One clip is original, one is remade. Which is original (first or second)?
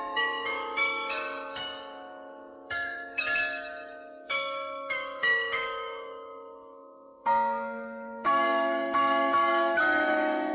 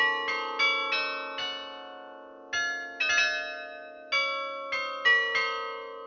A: second